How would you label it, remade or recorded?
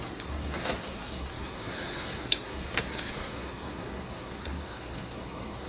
remade